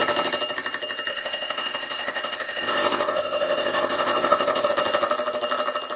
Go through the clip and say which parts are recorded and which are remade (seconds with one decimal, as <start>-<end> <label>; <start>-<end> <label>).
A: 0.0-1.1 recorded; 1.1-4.7 remade; 4.7-6.0 recorded